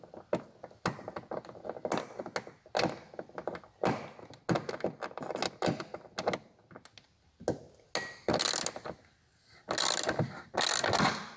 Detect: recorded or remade recorded